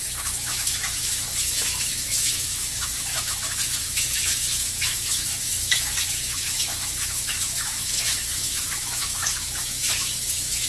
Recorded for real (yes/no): no